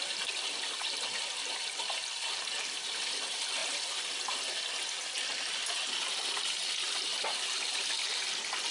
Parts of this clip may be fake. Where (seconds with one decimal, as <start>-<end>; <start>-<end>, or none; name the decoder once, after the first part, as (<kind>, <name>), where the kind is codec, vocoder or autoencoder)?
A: none

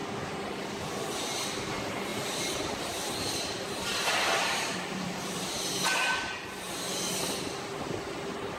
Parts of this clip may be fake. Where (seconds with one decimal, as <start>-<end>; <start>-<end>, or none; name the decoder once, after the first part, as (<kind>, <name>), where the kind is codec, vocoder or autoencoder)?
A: 2.1-5.6 (vocoder, BigVGAN v2)

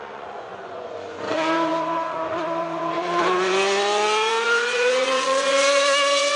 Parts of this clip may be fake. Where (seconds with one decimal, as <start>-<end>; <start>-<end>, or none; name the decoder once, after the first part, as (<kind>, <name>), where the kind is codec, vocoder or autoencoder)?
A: 0.0-6.4 (vocoder, Vocos)